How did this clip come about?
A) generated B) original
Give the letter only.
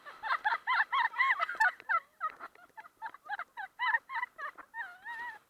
B